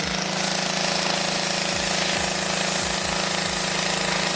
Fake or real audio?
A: real